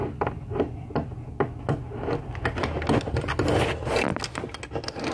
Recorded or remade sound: recorded